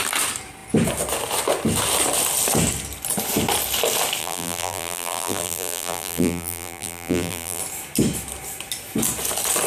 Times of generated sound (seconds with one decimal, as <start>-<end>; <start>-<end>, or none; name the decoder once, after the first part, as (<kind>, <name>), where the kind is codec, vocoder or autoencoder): 4.2-7.6 (vocoder, BigVGAN v2)